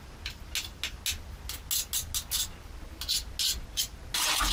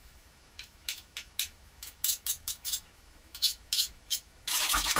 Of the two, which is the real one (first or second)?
first